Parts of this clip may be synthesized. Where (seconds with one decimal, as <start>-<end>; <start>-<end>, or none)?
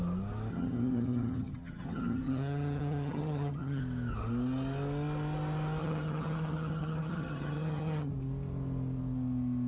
0.5-3.8; 5.8-8.1